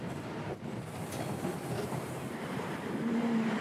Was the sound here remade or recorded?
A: remade